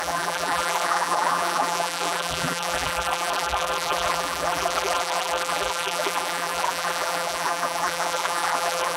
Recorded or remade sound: remade